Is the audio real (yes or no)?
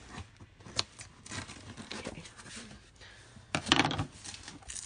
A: yes